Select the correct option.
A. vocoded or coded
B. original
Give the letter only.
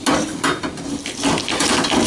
B